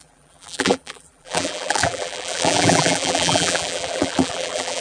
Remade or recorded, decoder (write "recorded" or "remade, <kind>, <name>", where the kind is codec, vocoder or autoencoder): remade, vocoder, BigVGAN v2